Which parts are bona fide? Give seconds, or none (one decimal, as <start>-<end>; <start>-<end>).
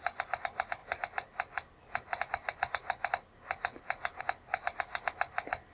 0.0-5.7